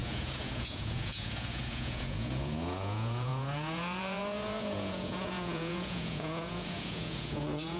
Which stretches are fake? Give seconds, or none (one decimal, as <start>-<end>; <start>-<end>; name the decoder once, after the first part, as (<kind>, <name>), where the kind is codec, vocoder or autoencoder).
0.0-7.8 (vocoder, Vocos)